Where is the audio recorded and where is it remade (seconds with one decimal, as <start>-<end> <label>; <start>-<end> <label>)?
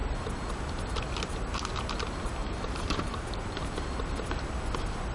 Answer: 0.0-2.4 recorded; 2.4-3.4 remade; 3.4-5.1 recorded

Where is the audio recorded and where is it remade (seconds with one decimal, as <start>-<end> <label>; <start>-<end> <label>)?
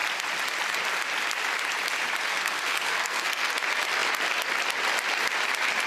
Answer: 0.0-2.3 recorded; 2.3-3.5 remade; 3.5-5.9 recorded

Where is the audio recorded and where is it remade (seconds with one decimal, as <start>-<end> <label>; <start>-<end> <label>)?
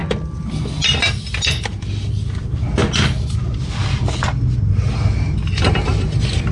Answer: 0.0-6.5 recorded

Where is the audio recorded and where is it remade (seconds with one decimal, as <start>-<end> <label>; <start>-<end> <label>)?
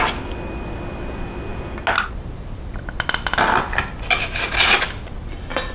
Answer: 0.0-5.7 recorded